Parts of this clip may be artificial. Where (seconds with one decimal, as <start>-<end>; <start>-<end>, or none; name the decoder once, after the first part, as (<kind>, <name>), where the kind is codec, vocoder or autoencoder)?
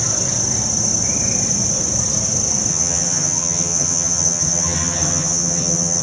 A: 2.7-6.0 (vocoder, HiFi-GAN)